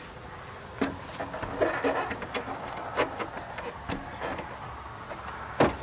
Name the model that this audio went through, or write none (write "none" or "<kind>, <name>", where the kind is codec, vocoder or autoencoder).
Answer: none